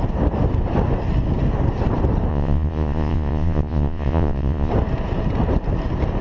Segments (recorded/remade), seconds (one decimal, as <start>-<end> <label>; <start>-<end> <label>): 0.0-2.3 recorded; 2.3-4.7 remade; 4.7-6.2 recorded